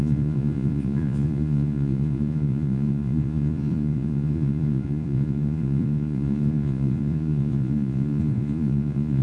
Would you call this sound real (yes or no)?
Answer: no